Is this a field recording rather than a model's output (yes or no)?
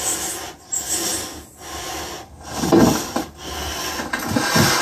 yes